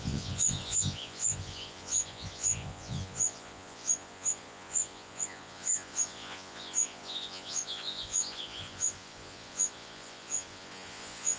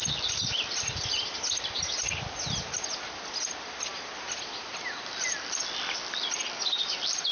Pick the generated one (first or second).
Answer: first